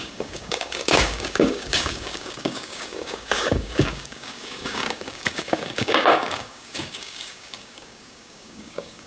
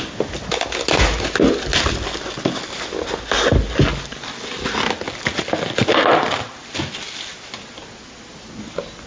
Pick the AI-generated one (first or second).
first